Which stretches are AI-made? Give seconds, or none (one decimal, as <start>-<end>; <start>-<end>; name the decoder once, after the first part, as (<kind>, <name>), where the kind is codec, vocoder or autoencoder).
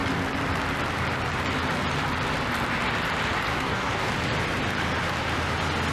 3.5-4.1 (codec, DAC)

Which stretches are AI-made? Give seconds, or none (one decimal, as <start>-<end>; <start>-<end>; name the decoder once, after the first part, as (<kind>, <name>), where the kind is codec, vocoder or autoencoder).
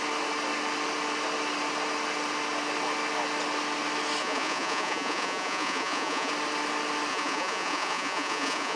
4.2-6.3 (vocoder, Vocos); 7.1-8.8